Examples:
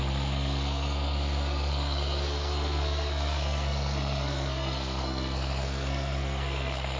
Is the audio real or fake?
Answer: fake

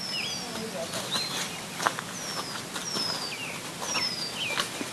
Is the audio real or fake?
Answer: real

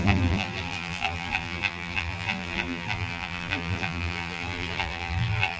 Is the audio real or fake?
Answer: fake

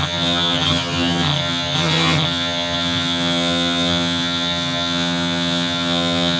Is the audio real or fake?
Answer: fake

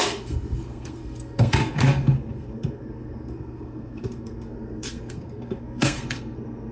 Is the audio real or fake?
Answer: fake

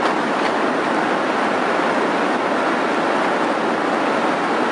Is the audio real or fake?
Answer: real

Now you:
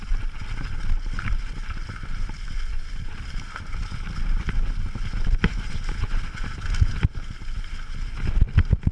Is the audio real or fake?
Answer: real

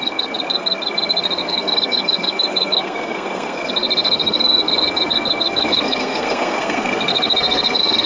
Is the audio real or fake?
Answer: fake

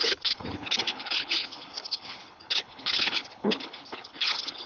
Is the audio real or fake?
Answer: fake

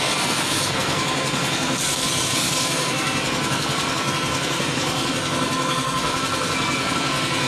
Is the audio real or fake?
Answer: fake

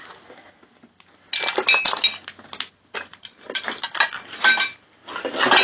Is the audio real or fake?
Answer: real